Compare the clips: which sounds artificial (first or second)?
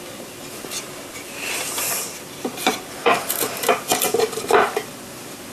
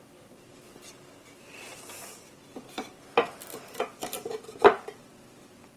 first